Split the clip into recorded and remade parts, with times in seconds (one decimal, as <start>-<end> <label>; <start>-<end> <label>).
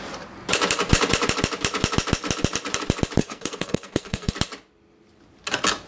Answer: 0.0-3.2 recorded; 3.2-4.3 remade; 4.3-5.9 recorded